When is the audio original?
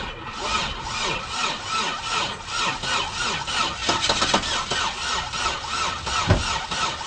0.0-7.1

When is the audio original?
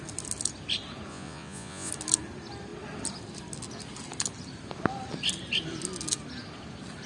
0.0-1.1; 1.9-7.1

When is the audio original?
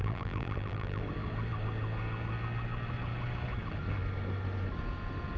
1.0-5.4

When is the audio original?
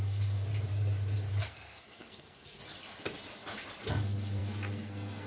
0.5-1.4; 2.6-3.9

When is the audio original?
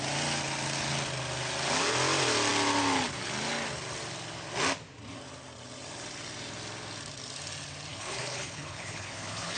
0.0-7.9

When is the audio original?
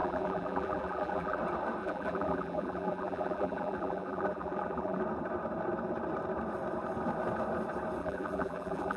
1.4-1.8; 5.0-8.0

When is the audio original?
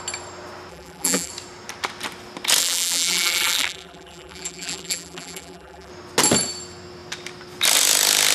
0.0-0.7; 1.3-2.6; 5.9-8.3